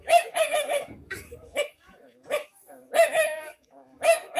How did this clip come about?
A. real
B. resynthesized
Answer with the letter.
B